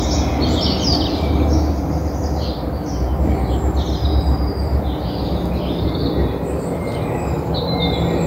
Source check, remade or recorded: recorded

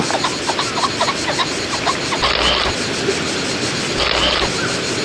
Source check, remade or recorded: recorded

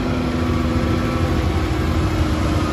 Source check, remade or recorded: recorded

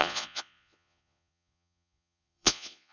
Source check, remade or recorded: remade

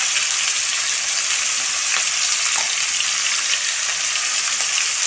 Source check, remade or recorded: recorded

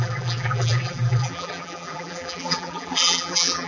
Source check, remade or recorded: remade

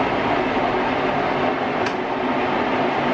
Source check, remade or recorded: recorded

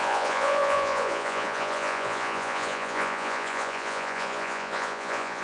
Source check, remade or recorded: remade